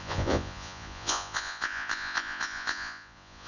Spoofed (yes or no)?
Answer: yes